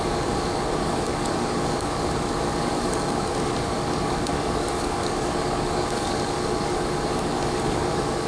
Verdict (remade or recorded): remade